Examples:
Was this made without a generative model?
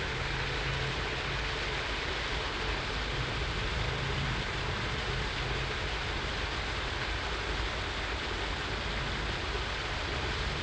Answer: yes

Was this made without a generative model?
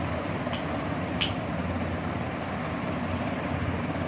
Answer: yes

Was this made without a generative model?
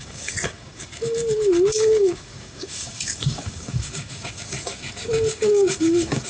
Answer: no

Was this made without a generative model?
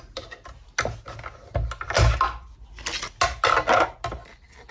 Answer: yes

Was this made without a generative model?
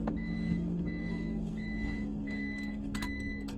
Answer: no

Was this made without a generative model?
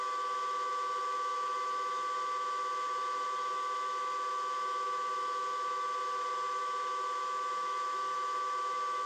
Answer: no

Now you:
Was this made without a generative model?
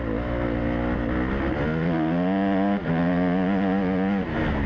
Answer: yes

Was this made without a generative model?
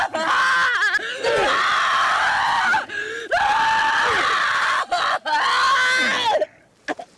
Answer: yes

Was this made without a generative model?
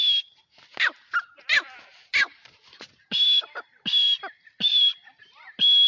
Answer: yes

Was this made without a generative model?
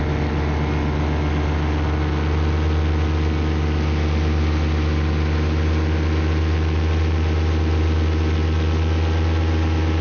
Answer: yes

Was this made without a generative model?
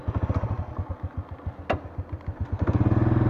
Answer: yes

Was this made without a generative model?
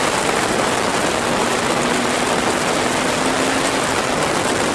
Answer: yes